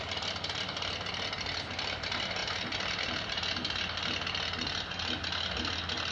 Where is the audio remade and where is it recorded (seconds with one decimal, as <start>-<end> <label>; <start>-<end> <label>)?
0.0-2.4 remade; 2.4-3.0 recorded; 3.0-6.1 remade